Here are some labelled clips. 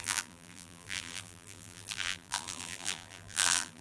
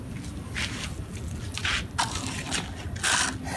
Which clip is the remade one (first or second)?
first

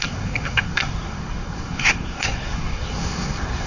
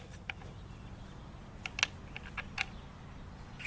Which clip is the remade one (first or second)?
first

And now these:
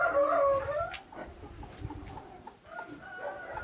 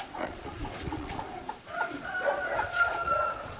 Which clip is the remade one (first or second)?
second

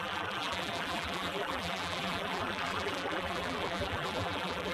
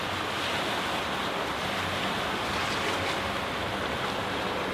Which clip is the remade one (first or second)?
first